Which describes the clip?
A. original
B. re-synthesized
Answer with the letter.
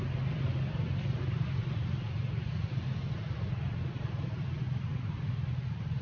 A